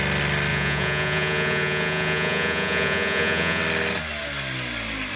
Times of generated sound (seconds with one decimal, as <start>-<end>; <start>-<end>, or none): 0.5-3.6